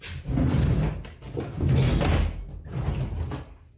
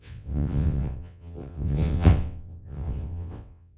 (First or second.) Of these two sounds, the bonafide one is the first